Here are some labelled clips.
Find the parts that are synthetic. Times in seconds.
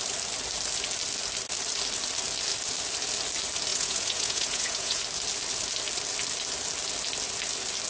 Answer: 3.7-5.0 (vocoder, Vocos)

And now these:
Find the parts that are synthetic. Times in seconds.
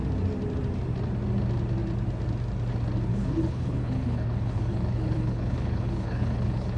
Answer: 3.1-6.8 (codec, HILCodec)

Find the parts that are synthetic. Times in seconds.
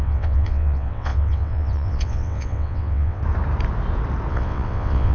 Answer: 0.0-3.2 (vocoder, WaveNeXt); 4.3-5.1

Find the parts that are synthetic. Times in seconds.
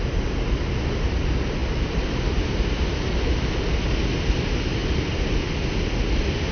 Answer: 4.8-5.4 (vocoder, BigVGAN v2)